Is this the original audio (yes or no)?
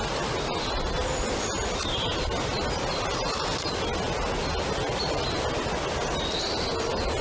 yes